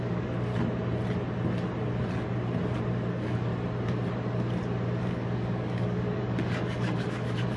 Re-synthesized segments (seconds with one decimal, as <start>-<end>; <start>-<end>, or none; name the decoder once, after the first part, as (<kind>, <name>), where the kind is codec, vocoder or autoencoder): 0.0-0.5 (codec, DAC); 3.1-3.5; 5.0-7.6